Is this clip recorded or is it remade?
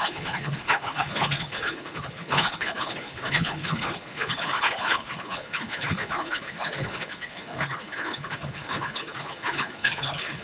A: remade